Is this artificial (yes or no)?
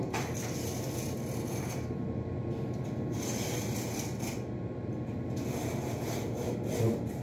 no